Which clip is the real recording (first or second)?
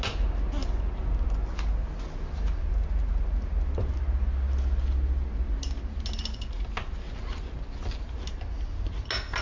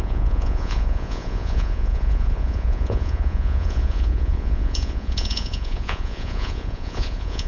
first